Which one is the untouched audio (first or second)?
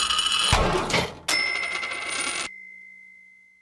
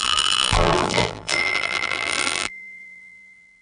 first